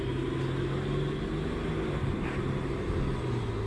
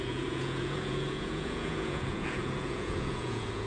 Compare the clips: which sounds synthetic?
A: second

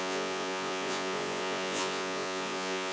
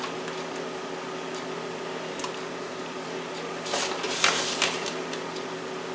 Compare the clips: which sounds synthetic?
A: first